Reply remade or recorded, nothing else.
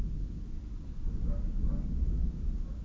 recorded